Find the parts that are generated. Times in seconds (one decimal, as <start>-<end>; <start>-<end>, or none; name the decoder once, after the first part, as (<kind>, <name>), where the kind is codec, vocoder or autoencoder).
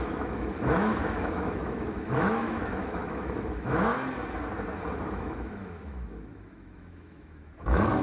0.0-3.9 (autoencoder, DAC-VAE); 5.1-8.0